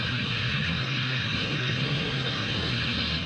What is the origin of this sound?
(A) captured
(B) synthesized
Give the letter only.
B